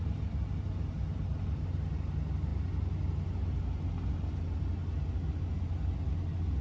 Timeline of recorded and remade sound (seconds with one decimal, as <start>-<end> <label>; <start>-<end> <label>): 0.0-6.6 recorded